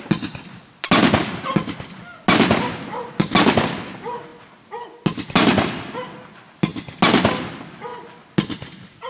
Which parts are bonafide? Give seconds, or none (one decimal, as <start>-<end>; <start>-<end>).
0.0-9.1